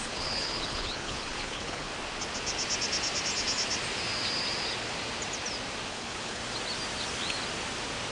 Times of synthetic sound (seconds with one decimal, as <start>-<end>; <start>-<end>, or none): 0.0-1.9; 5.9-6.4